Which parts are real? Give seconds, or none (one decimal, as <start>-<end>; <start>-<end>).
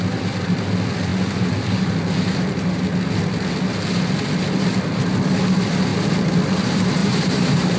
0.0-7.0